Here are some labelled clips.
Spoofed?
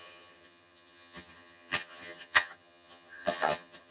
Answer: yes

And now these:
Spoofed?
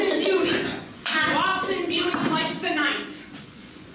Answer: yes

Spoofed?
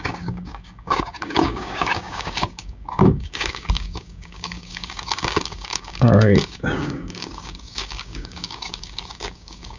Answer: yes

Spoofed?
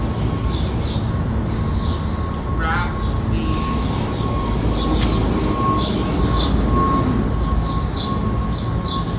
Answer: no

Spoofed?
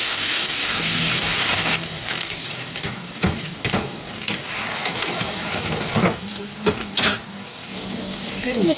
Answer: yes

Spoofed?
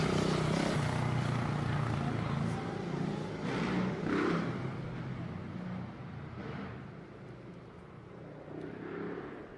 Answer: no